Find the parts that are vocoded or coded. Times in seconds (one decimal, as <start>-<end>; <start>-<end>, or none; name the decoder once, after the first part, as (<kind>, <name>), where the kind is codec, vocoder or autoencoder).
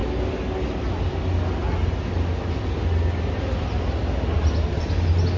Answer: none